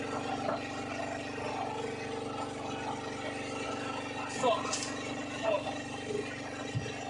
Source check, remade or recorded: recorded